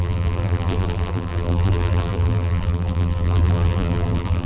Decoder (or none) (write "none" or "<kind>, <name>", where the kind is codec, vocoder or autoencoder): vocoder, BigVGAN v2